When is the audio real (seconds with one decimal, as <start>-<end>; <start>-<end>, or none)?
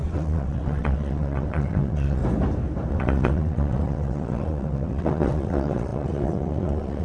2.2-2.9